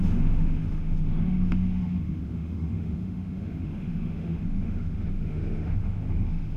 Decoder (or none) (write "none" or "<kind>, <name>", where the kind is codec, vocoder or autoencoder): autoencoder, DAC-VAE